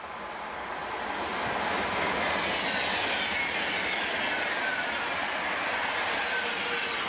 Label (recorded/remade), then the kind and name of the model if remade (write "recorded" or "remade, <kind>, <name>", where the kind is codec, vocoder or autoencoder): recorded